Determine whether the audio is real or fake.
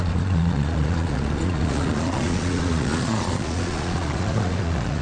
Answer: fake